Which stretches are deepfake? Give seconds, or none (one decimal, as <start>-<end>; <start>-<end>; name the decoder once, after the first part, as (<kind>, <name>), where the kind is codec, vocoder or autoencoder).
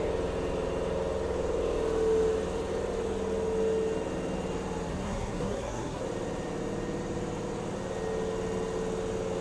4.9-6.0 (codec, SNAC)